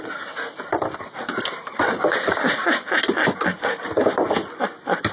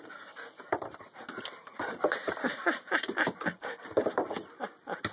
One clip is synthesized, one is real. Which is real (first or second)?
first